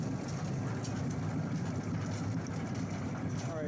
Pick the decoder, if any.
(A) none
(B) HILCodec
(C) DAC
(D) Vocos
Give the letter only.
A